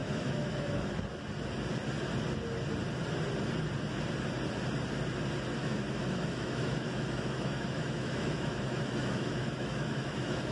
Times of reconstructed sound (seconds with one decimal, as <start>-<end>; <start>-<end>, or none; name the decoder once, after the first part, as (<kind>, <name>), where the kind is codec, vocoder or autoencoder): 0.0-0.9 (autoencoder, DAC-VAE); 5.6-10.5

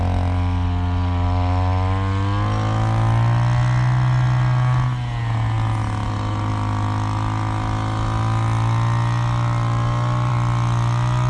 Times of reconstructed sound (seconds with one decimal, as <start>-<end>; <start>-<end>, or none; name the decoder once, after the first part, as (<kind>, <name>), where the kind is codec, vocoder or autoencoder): none

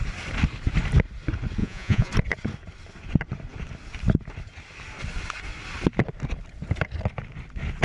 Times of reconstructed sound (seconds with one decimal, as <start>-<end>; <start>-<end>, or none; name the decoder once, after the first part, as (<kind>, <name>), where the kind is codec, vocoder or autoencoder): 1.6-2.1 (vocoder, Vocos)

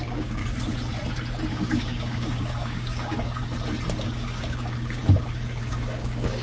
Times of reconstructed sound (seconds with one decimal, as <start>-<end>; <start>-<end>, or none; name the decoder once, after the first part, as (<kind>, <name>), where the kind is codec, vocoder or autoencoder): 0.0-0.4 (codec, DAC); 1.5-3.4; 4.0-5.0; 5.6-6.4

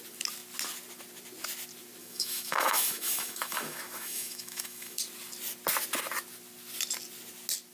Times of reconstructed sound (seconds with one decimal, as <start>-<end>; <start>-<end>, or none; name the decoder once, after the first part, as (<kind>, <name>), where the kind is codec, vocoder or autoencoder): 2.0-5.0 (autoencoder, DAC-VAE)

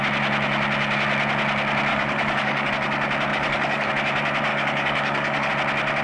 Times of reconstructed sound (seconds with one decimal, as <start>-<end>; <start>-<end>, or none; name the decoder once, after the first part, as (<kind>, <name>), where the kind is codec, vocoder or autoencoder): 1.9-2.7 (codec, DAC); 3.3-3.9; 4.5-5.5

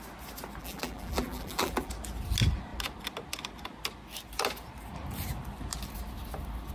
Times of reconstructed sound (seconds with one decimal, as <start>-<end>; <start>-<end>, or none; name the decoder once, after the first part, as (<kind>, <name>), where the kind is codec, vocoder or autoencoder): 0.6-1.9 (vocoder, BigVGAN v2)